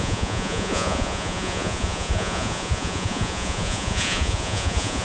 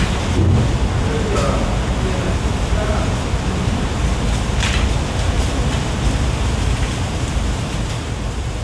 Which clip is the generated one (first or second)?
first